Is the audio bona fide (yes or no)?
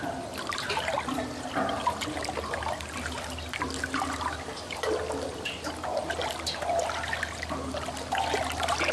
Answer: yes